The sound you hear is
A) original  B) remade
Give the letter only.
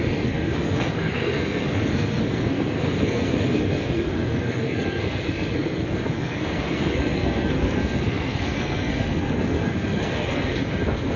B